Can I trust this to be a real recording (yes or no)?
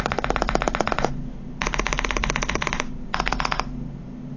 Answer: yes